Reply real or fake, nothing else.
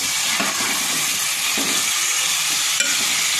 real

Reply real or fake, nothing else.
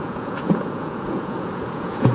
fake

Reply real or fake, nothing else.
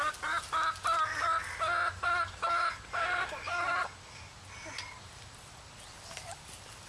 real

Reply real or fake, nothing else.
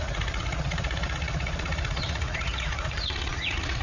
fake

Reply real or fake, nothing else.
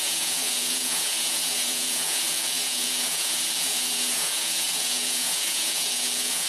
fake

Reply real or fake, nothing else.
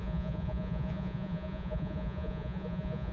fake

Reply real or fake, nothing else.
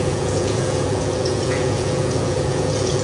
fake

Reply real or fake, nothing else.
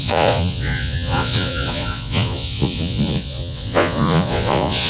fake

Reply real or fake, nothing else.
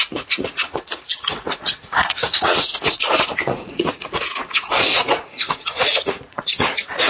fake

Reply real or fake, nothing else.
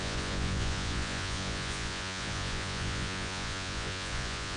fake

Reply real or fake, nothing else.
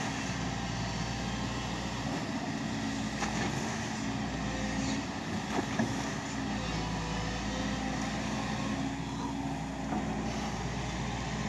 real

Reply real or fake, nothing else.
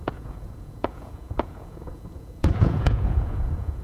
fake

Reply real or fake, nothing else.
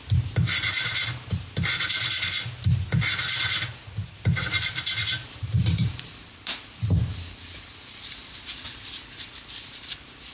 real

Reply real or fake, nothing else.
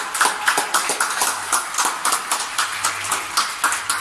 real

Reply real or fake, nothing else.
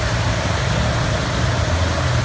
real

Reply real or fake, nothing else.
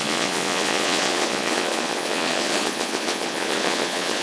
fake